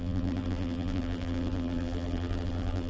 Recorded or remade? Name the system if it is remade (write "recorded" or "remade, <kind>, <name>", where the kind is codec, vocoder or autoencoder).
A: remade, vocoder, BigVGAN v2